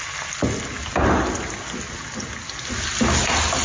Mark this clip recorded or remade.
recorded